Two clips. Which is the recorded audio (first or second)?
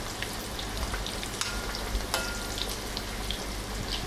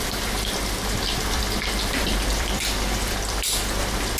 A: first